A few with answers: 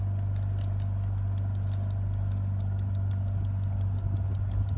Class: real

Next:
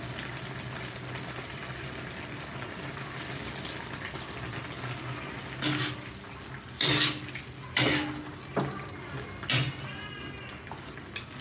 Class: real